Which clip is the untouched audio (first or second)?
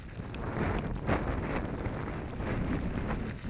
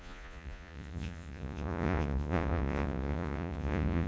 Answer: first